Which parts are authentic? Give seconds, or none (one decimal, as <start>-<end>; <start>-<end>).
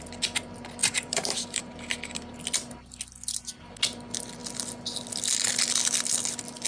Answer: 0.0-0.8; 1.6-6.7